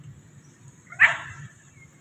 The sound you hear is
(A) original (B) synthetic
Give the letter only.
A